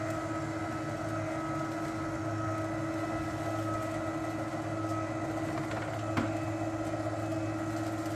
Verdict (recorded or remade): recorded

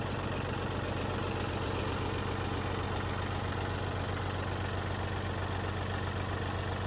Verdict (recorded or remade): recorded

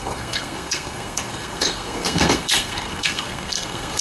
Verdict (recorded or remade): remade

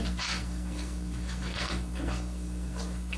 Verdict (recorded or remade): remade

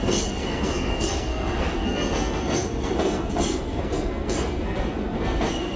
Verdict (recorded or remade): remade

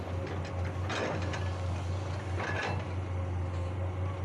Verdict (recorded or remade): recorded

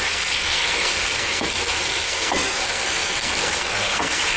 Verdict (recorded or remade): remade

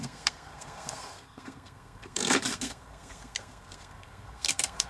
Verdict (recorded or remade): remade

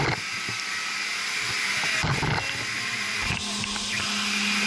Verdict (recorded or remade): recorded